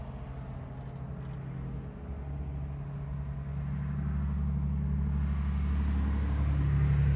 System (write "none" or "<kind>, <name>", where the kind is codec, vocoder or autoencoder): none